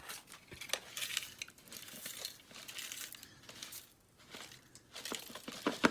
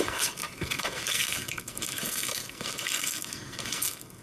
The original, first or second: first